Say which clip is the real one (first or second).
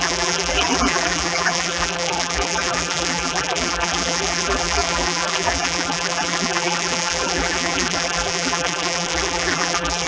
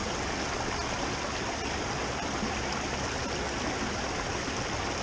second